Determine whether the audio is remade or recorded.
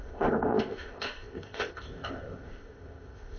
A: remade